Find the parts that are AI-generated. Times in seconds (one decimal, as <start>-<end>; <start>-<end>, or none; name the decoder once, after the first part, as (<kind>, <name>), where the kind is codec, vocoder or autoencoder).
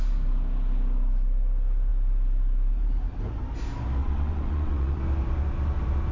4.0-5.0 (vocoder, WaveNeXt)